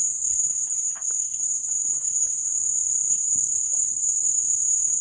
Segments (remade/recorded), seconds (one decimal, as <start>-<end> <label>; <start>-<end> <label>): 0.0-2.5 remade; 2.5-3.1 recorded; 3.1-5.0 remade